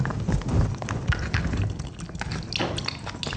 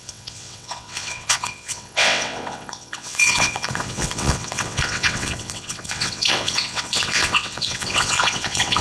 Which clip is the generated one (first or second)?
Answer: second